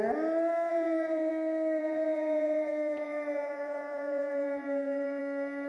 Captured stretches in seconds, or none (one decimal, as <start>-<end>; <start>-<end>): 0.0-0.7; 1.3-1.8; 5.2-5.7